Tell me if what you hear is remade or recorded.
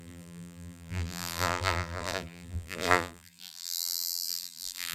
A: remade